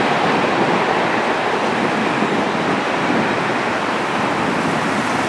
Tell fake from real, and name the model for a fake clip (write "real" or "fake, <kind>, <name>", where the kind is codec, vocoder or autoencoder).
real